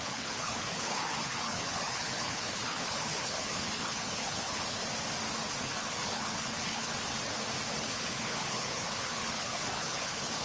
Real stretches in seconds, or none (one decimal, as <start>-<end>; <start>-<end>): 4.8-5.6; 6.9-7.7